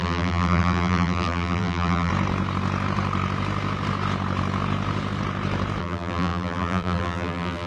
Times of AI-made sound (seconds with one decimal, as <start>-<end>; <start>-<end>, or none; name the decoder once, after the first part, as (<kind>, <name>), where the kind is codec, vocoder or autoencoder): 0.0-2.1 (vocoder, BigVGAN v2); 5.8-7.7

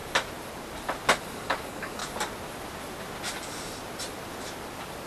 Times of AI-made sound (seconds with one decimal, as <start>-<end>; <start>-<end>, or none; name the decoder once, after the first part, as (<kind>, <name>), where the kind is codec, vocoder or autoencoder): 1.2-2.0 (codec, DAC)

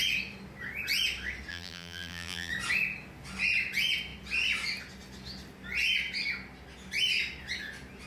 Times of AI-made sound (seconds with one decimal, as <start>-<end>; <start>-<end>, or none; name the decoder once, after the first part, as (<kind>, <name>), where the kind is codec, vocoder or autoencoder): 1.5-2.5 (vocoder, BigVGAN v2)

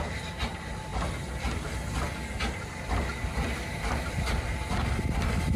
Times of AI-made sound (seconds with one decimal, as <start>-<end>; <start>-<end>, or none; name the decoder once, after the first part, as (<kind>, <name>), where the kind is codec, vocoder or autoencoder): none

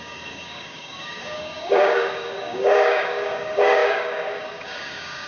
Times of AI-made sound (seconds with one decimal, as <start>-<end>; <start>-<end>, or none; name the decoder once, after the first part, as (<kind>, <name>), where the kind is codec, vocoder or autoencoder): 0.0-5.3 (codec, DAC)

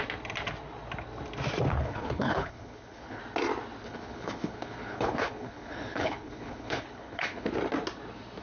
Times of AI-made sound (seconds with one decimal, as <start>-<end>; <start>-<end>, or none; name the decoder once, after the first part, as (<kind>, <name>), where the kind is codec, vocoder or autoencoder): 1.7-3.2 (codec, HILCodec); 3.8-7.5

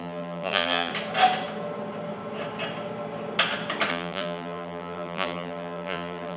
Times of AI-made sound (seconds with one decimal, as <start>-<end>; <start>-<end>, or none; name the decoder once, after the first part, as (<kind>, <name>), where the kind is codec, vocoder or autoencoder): 0.0-0.9 (vocoder, BigVGAN v2); 3.9-6.4